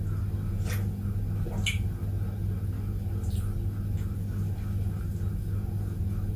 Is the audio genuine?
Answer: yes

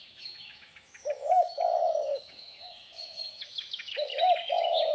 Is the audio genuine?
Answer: no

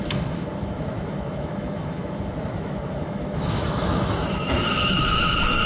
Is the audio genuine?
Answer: no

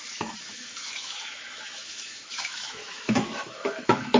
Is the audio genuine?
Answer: no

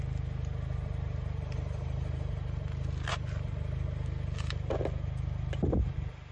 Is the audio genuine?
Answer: yes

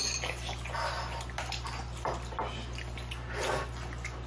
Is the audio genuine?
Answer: yes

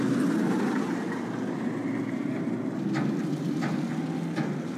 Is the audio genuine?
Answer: yes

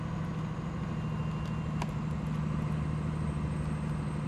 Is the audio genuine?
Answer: yes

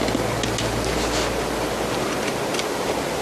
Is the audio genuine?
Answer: yes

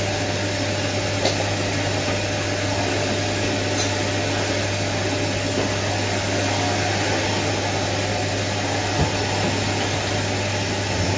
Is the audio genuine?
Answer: yes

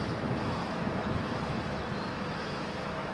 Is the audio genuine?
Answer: no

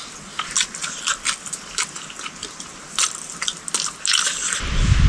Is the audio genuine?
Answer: yes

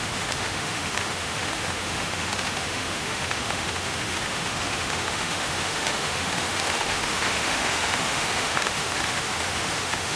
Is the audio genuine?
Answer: no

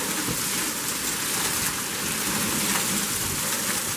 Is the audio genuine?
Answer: yes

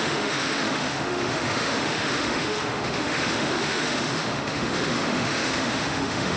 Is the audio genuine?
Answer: no